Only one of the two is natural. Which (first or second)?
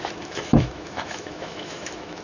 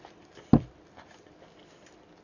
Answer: second